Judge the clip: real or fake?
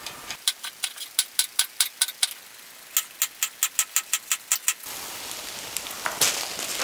real